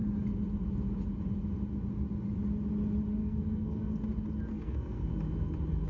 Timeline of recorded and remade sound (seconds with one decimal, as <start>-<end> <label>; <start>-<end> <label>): 0.0-3.2 recorded; 3.2-3.9 remade; 3.9-4.5 recorded; 4.5-5.1 remade; 5.1-5.9 recorded